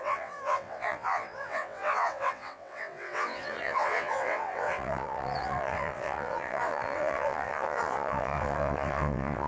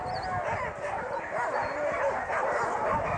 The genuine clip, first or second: second